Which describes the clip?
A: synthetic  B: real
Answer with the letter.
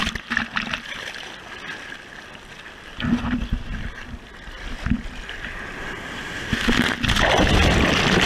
B